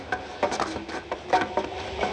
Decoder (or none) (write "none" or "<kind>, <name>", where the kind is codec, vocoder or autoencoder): none